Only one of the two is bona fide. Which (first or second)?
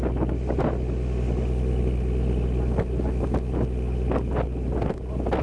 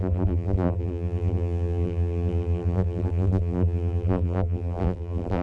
first